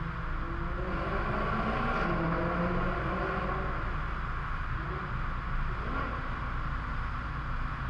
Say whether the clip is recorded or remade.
recorded